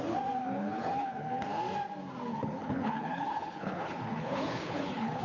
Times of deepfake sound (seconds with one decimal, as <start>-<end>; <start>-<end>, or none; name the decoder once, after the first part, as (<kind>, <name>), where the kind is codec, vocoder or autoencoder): 0.4-1.6 (codec, HILCodec); 2.3-5.2

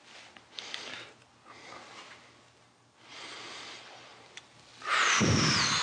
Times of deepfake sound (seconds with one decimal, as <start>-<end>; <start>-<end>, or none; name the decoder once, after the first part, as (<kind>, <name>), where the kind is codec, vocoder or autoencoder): none

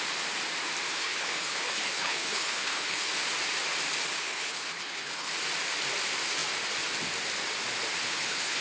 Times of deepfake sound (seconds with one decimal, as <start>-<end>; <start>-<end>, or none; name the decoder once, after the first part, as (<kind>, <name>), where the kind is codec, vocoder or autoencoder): 0.9-3.1 (codec, HILCodec); 4.2-5.3; 8.0-8.6

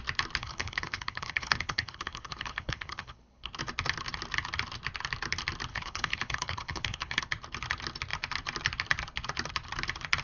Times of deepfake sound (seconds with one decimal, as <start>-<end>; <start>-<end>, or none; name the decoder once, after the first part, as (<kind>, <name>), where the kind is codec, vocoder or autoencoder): 0.4-3.5 (codec, HILCodec); 5.7-7.2

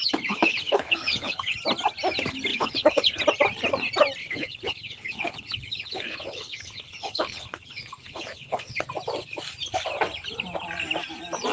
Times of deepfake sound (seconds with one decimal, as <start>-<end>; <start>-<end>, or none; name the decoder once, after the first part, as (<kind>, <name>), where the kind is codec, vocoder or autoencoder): 0.0-1.6 (codec, HILCodec); 2.5-3.2; 4.2-8.8